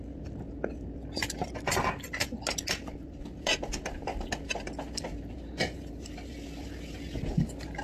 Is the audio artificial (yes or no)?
no